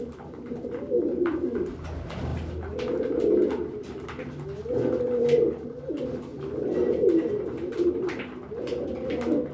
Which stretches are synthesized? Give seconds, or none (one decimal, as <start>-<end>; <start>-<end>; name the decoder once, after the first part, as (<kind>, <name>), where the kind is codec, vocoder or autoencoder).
none

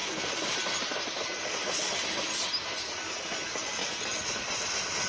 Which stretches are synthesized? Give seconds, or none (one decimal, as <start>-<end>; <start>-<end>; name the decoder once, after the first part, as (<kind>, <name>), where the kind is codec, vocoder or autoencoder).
none

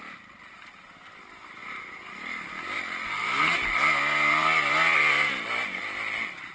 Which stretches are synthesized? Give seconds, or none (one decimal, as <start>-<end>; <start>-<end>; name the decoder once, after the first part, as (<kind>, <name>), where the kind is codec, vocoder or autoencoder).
none